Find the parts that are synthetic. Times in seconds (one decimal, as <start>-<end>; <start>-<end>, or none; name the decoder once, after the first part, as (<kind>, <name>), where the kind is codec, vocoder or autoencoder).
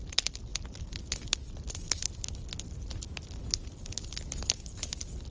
none